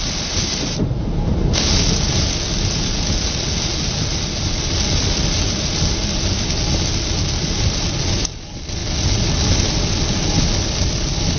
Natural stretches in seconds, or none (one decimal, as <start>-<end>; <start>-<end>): 0.0-11.4